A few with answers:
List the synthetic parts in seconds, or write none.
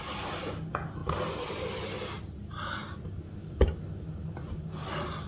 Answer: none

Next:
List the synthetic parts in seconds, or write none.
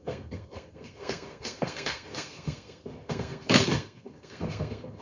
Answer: 0.0-5.0 (codec, SNAC)